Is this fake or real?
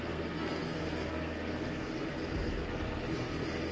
fake